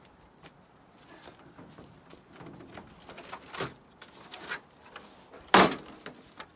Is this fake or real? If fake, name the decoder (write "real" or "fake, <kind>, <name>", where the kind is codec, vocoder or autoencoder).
real